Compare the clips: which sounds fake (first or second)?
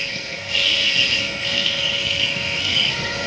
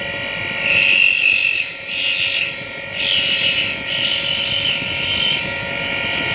first